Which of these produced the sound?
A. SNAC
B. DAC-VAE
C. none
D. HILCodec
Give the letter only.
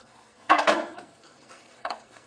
A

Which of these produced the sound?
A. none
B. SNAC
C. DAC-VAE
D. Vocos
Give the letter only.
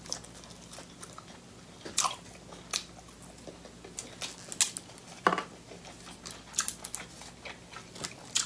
A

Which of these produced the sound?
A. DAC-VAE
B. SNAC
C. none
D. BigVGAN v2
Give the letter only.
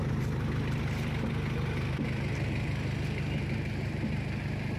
C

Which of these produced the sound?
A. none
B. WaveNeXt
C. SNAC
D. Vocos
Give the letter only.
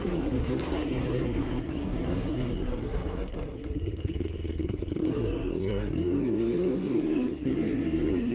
C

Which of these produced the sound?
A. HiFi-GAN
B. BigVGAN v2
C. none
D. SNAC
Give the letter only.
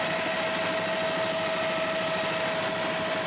C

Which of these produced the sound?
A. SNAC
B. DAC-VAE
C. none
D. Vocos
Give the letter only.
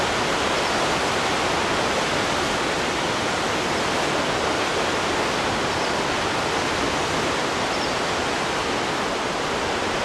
C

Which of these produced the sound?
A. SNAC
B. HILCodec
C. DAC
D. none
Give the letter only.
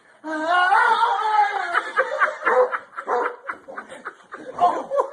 D